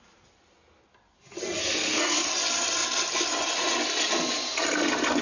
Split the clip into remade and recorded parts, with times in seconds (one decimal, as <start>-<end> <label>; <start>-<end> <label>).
0.0-1.6 recorded; 1.6-2.3 remade; 2.3-5.2 recorded